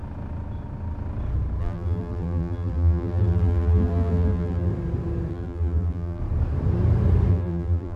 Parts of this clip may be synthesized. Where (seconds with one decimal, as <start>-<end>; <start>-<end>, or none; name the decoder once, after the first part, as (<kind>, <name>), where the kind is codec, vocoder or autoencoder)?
1.6-4.7 (vocoder, BigVGAN v2); 5.3-6.2; 7.3-8.0